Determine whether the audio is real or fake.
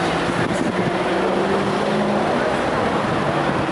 real